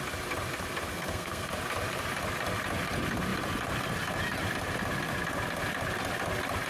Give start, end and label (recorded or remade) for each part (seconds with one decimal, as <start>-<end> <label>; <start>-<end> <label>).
0.0-0.9 recorded; 0.9-1.5 remade; 1.5-6.7 recorded